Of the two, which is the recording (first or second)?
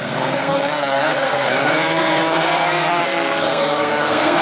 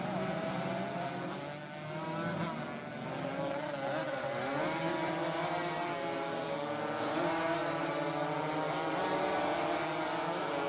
second